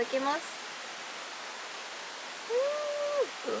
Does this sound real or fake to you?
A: real